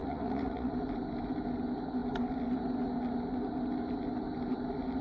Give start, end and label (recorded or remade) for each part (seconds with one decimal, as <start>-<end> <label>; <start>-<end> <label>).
0.0-0.7 remade; 0.7-5.0 recorded